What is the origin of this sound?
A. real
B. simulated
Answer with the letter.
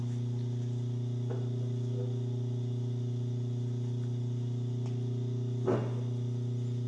A